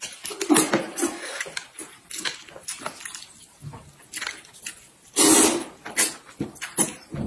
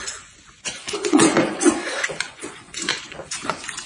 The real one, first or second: first